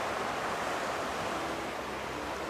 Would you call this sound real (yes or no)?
yes